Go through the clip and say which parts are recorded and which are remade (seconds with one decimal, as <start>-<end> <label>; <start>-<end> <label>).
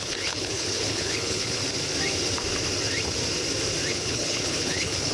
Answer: 0.0-1.6 remade; 1.6-3.9 recorded; 3.9-5.1 remade